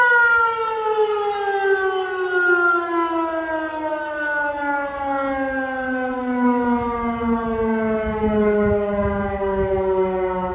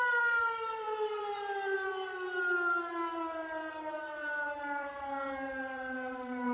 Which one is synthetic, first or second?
second